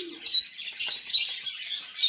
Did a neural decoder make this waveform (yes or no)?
no